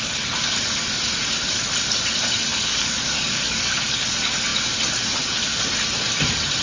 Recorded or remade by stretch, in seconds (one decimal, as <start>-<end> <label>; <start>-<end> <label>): 0.0-2.5 recorded; 2.5-4.1 remade; 4.1-6.6 recorded